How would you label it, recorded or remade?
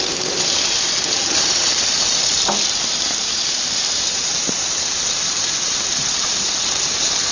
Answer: remade